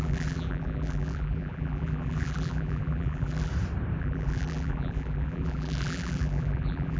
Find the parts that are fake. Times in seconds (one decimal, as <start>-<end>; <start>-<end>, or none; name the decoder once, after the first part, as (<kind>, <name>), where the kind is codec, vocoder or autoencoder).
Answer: 0.0-3.5 (vocoder, BigVGAN v2); 4.0-7.0